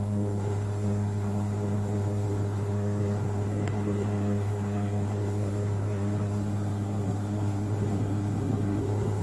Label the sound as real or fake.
fake